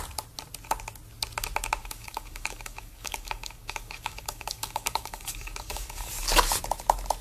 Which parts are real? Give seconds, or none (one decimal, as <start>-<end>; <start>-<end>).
0.0-1.8; 6.1-7.2